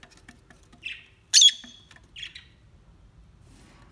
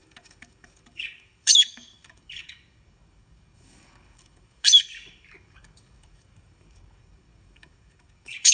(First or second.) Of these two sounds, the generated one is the second